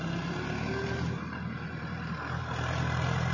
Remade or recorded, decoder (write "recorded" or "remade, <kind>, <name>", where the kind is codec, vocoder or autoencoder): recorded